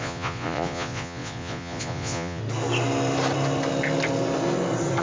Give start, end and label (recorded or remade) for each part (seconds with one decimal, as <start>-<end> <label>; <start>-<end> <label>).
0.0-2.4 remade; 2.4-5.0 recorded